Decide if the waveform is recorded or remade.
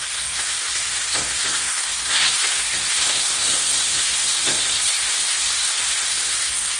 remade